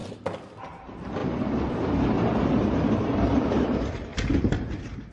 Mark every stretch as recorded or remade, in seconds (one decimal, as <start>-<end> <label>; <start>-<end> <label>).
0.0-0.6 recorded; 0.6-4.1 remade; 4.1-4.6 recorded; 4.6-5.1 remade